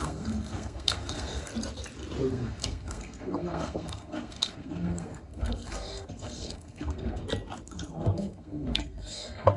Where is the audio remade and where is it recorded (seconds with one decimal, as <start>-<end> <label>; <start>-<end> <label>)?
0.0-1.5 remade; 1.5-2.3 recorded; 2.3-7.2 remade; 7.2-7.7 recorded; 7.7-9.6 remade